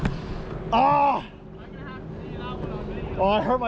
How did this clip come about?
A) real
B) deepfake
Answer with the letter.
A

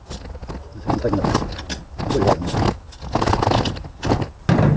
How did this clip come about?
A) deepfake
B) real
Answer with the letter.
B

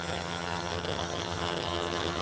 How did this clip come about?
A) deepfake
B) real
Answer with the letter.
A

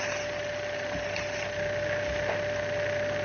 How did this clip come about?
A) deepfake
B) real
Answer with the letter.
B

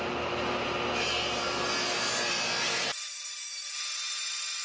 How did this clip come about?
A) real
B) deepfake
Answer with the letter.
A